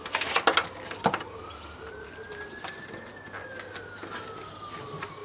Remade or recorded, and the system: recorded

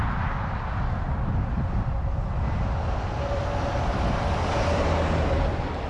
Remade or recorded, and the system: recorded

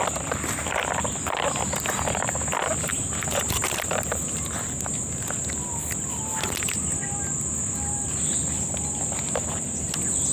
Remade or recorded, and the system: recorded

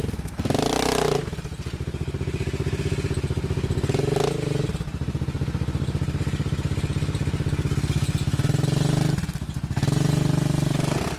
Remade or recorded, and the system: recorded